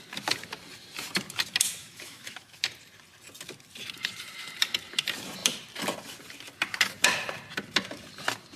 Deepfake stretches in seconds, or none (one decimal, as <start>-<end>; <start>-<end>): 1.8-2.6